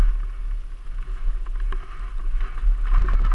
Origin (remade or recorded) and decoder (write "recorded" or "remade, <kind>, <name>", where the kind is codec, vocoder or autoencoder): recorded